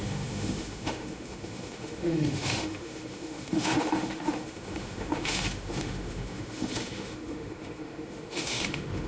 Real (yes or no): no